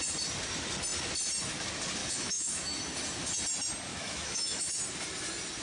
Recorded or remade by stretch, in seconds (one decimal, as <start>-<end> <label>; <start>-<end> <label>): 0.0-2.0 recorded; 2.0-2.8 remade; 2.8-3.9 recorded; 3.9-4.7 remade; 4.7-5.6 recorded